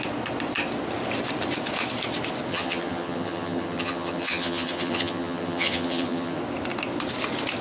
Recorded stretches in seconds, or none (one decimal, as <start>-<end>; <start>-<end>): 0.0-2.5; 6.4-7.6